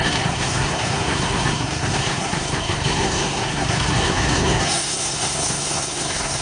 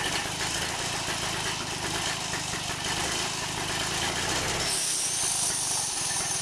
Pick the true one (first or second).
second